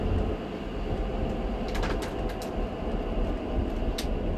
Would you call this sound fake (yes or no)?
no